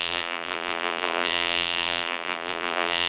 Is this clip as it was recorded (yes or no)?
no